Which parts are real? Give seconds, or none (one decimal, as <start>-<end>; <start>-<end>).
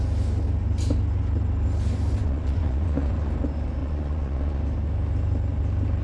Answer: 0.0-2.2; 3.3-3.8; 4.6-6.0